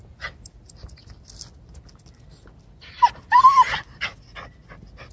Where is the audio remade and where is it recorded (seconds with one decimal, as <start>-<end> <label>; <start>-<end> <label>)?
0.0-5.1 recorded